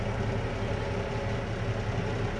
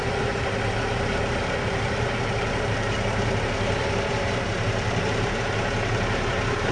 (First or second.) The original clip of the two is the first